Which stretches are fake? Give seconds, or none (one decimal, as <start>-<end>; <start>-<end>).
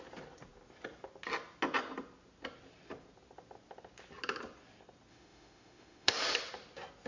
5.1-6.2